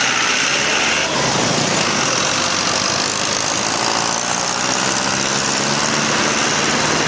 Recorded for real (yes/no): yes